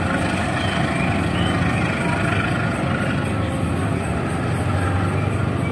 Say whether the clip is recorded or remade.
recorded